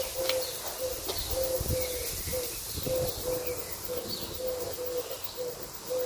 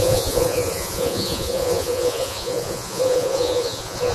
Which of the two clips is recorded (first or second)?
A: first